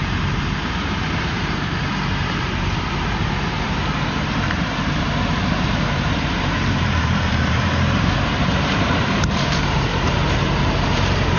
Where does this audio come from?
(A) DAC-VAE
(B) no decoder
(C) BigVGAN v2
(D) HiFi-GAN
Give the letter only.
C